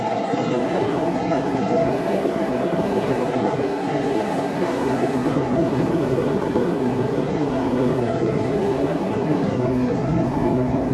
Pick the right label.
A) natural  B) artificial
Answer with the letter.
B